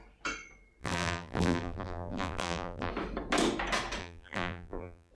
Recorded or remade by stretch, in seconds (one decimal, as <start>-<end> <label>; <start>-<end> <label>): 0.0-0.8 recorded; 0.8-2.9 remade; 2.9-4.0 recorded; 4.0-5.1 remade